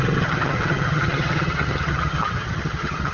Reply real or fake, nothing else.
fake